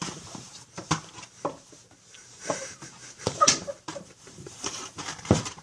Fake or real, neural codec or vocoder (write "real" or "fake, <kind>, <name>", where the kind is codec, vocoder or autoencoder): fake, vocoder, BigVGAN v2